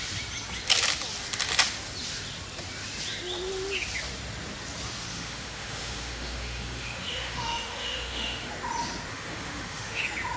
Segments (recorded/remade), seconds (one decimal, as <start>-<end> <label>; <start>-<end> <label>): 0.0-5.1 recorded; 5.1-8.5 remade; 8.5-9.1 recorded; 9.1-10.0 remade; 10.0-10.4 recorded